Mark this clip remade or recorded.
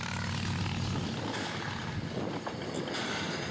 recorded